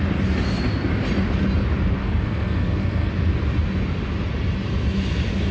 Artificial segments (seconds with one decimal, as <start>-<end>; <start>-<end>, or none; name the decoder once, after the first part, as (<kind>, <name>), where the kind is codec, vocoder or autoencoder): 2.0-3.1 (codec, SNAC)